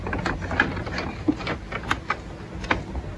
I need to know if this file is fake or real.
real